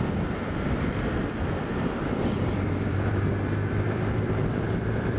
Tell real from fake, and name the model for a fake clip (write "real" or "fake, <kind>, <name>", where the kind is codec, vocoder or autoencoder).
fake, vocoder, BigVGAN v2